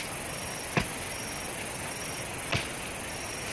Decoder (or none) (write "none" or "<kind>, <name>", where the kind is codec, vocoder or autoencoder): none